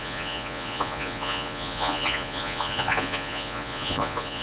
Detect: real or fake fake